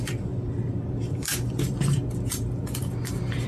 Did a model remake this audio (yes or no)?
yes